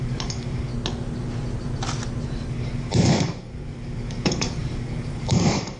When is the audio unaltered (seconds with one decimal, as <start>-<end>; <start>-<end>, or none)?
0.7-2.5